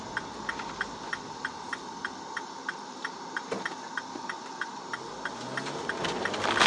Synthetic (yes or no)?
no